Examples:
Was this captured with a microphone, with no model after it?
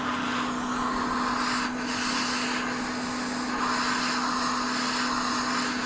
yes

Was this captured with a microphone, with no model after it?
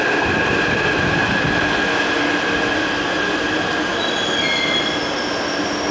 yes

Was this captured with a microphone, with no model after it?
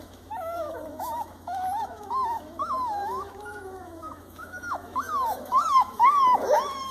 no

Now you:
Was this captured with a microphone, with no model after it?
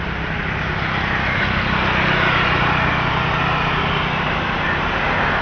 yes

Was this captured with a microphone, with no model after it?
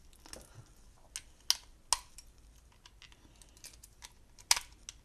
yes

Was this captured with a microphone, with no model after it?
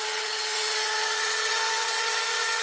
no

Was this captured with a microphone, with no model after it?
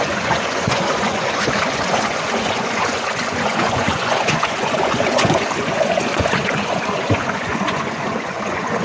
no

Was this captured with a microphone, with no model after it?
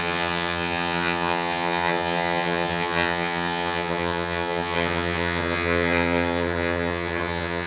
no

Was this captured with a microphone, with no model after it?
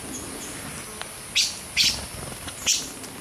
yes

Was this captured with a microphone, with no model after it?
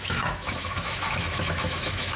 no